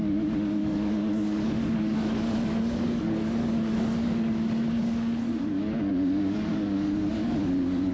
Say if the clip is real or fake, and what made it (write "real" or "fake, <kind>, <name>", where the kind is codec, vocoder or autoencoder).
fake, codec, DAC